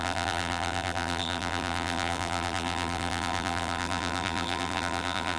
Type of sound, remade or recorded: remade